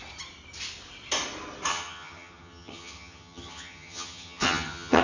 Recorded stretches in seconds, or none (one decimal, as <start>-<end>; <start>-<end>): 0.0-1.7

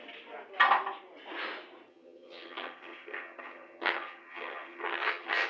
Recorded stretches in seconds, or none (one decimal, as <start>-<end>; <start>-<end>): 0.0-1.9

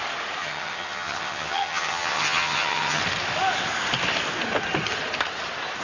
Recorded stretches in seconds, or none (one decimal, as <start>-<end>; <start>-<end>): 0.0-0.4; 3.0-5.8

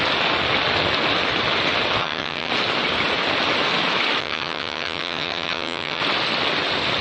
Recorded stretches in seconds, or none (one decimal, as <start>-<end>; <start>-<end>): 0.0-2.0; 2.5-4.2; 6.0-7.0